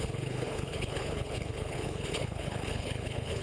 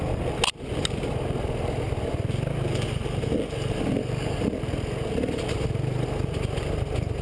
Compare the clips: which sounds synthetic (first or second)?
first